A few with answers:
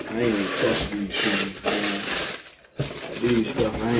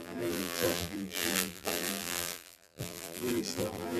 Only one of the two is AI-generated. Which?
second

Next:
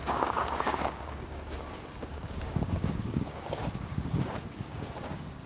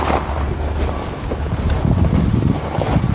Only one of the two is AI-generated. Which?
first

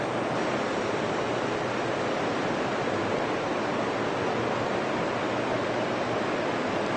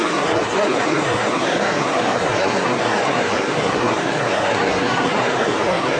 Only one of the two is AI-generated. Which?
second